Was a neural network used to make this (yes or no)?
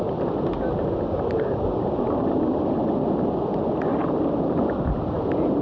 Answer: no